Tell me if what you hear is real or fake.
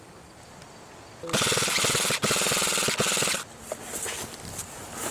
real